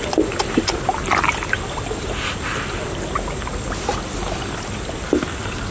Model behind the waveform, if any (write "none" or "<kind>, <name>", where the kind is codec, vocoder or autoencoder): none